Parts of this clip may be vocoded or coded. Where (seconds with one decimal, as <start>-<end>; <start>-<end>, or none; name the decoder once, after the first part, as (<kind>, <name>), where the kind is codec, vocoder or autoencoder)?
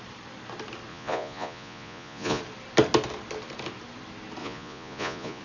0.9-2.4 (vocoder, Vocos); 4.4-5.4